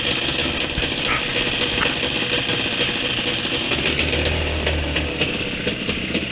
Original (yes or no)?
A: yes